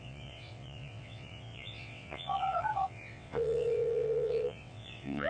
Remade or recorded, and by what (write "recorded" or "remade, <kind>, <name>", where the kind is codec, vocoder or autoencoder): remade, vocoder, WaveNeXt